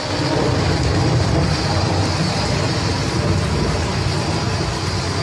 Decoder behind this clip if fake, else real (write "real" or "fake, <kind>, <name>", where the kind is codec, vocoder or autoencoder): real